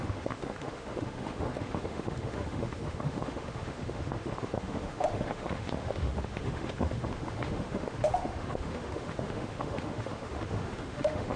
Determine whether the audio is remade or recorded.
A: remade